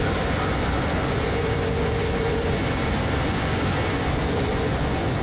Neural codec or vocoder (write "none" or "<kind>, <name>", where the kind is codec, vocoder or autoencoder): vocoder, Vocos